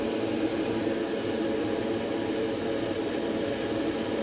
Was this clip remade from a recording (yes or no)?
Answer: no